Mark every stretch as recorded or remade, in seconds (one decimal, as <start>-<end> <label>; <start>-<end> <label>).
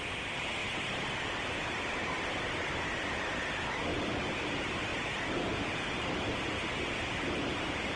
0.0-0.6 remade; 0.6-2.8 recorded; 2.8-3.9 remade; 3.9-4.5 recorded; 4.5-4.9 remade; 4.9-6.9 recorded; 6.9-8.0 remade